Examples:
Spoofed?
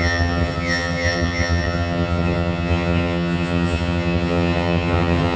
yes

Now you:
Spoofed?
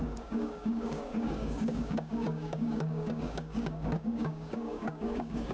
yes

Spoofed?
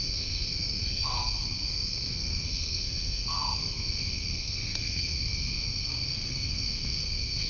yes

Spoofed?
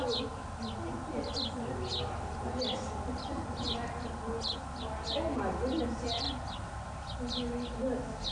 no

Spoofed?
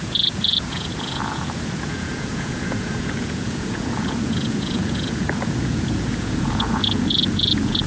yes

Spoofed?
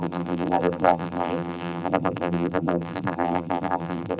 yes